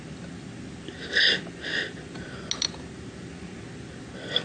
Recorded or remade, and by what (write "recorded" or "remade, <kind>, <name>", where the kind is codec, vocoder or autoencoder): recorded